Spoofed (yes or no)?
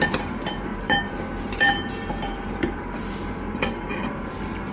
yes